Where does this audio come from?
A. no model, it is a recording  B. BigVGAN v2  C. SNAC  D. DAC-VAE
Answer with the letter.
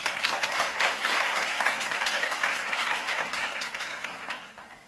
C